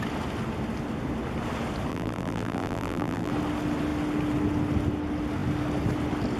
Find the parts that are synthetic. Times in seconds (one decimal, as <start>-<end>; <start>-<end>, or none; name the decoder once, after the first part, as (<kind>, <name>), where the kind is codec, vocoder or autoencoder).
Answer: 1.9-3.3 (vocoder, BigVGAN v2)